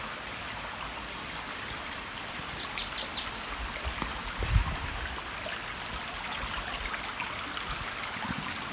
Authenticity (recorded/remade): recorded